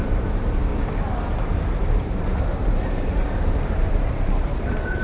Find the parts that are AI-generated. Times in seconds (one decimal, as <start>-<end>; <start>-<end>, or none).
0.0-0.7; 1.7-5.0